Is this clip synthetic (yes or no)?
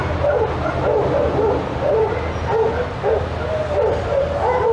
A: no